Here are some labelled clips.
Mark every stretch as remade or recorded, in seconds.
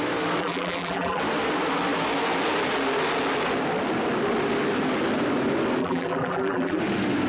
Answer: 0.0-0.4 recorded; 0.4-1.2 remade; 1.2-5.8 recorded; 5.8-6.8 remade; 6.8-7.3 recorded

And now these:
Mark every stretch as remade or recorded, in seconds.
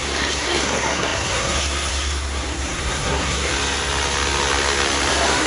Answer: 0.0-3.5 remade; 3.5-5.1 recorded; 5.1-5.5 remade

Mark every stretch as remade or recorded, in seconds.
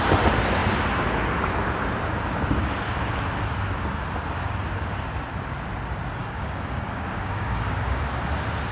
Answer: 0.0-6.2 recorded; 6.2-8.0 remade; 8.0-8.7 recorded